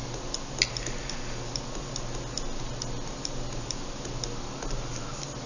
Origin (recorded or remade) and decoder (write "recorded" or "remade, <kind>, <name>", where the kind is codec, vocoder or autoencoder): recorded